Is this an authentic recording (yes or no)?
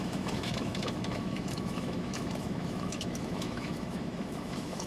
no